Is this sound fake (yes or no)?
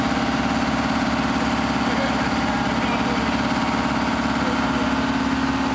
no